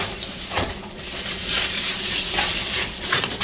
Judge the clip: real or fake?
fake